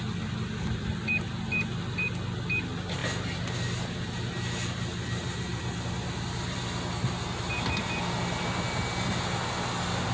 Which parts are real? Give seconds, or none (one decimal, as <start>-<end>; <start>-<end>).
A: 0.0-10.1